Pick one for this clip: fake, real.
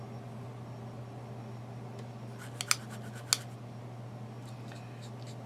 real